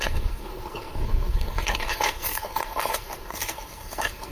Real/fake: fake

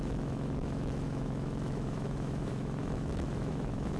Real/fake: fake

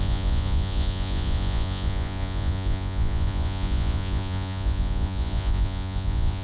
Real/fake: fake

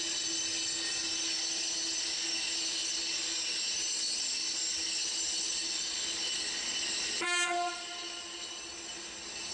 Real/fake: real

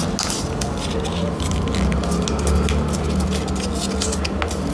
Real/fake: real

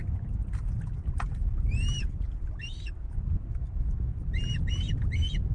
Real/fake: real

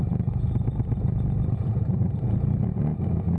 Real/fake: real